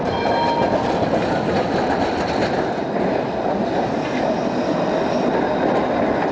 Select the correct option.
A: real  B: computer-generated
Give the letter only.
A